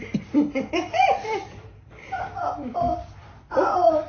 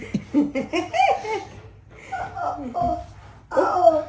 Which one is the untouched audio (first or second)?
second